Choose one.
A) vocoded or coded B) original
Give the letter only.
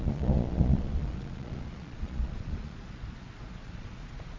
A